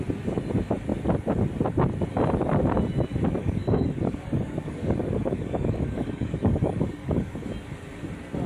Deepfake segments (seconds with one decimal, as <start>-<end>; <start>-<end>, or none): 3.4-7.5